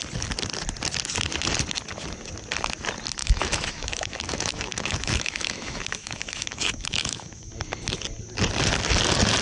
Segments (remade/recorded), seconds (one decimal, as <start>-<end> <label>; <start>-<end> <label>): 0.0-3.2 recorded; 3.2-7.5 remade; 7.5-9.4 recorded